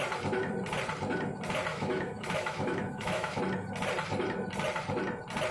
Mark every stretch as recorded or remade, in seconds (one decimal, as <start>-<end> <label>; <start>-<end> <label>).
0.0-1.7 recorded; 1.7-3.4 remade; 3.4-5.5 recorded